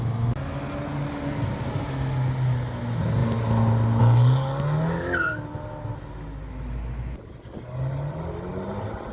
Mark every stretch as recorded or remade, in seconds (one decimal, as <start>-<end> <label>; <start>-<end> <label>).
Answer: 0.0-9.1 recorded